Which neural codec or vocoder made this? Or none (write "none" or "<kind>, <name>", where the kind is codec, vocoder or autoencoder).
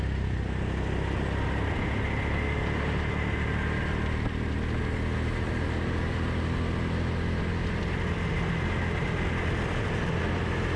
none